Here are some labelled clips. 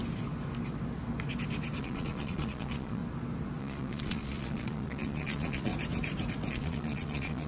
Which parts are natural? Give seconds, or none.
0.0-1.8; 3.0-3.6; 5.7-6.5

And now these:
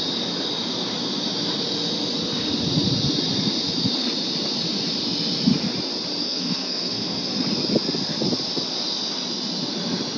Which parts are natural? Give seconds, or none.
0.0-6.2; 7.3-10.2

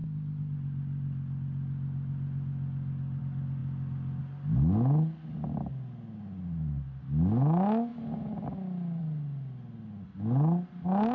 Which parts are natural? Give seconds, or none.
0.0-11.1

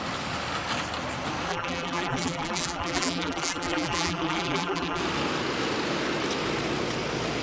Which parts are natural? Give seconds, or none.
0.0-1.5; 5.0-7.4

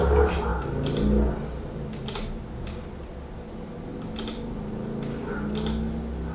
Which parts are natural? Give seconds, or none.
0.0-6.3